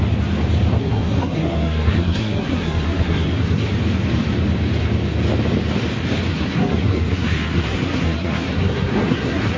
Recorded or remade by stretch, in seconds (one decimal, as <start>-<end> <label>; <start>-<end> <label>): 0.0-0.8 recorded; 0.8-3.7 remade; 3.7-6.3 recorded; 6.3-9.6 remade